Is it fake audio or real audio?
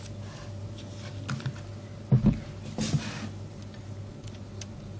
real